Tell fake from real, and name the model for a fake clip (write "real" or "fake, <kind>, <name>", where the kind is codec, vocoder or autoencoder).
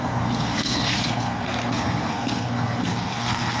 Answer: fake, codec, SNAC